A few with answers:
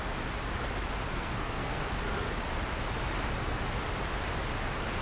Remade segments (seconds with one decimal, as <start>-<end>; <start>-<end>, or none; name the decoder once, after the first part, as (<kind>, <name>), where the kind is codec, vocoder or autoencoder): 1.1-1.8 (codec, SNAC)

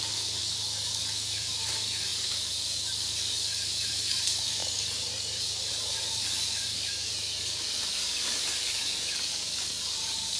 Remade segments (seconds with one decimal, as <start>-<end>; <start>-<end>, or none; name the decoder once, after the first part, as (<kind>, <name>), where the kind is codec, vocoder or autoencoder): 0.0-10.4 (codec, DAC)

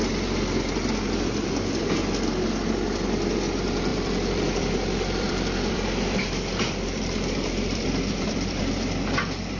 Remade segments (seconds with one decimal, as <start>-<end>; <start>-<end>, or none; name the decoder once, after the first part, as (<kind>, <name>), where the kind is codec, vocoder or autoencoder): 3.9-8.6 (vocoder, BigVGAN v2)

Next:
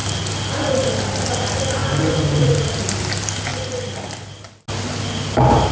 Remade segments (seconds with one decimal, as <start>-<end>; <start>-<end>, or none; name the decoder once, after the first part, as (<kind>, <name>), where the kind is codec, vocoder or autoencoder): 1.8-2.8 (vocoder, BigVGAN v2)

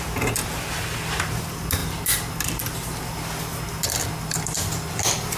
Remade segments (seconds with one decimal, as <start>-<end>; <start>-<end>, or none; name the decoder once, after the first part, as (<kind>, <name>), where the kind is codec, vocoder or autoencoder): none